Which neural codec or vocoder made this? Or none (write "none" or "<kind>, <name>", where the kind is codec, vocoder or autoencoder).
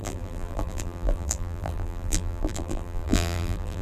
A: vocoder, BigVGAN v2